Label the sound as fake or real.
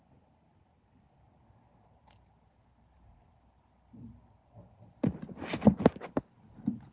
real